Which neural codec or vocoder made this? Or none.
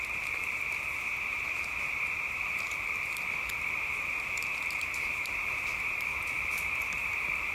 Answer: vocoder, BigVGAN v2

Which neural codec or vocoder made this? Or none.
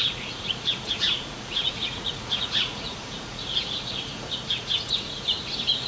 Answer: vocoder, Vocos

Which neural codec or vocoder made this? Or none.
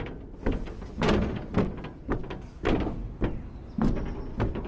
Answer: none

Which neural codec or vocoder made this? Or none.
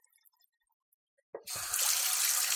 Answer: none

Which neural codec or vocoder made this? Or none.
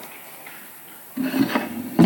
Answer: none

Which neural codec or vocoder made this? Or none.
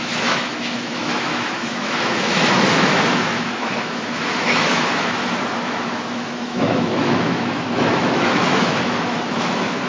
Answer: autoencoder, DAC-VAE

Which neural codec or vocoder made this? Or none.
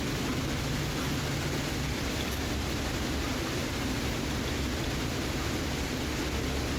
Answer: none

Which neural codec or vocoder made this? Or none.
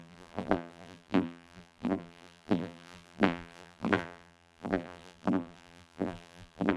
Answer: vocoder, BigVGAN v2